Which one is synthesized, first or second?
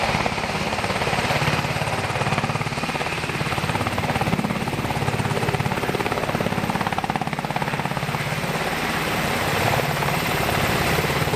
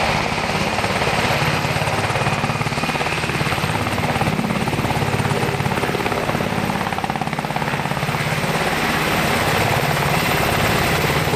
first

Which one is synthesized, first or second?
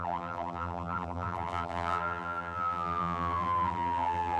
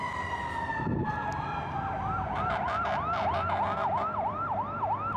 first